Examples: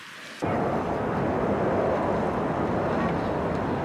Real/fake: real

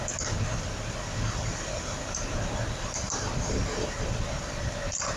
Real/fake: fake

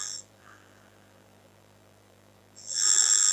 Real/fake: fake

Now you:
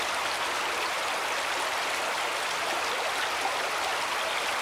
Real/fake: real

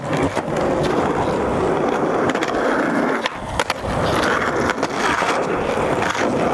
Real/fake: real